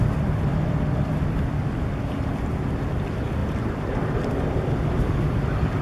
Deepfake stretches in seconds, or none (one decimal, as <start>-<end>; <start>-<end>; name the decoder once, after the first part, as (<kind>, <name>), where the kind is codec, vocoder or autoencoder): none